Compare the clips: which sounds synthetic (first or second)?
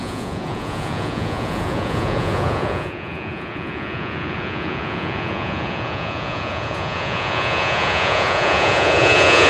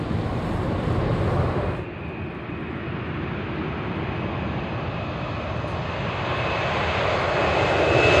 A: first